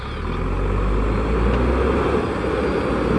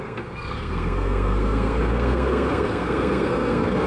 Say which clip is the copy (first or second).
second